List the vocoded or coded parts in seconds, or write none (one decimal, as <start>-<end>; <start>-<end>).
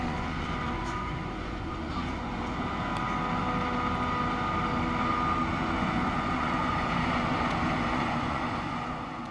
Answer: 0.0-2.9; 5.7-9.3